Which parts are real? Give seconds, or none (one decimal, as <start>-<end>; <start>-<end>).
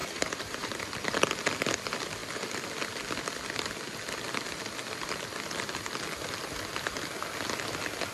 0.8-8.1